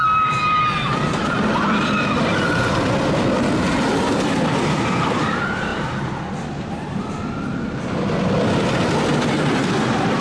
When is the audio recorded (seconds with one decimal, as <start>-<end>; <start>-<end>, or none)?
0.0-10.2